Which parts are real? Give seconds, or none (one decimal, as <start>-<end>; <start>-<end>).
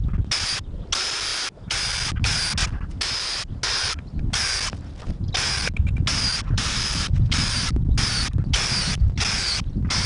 0.0-10.1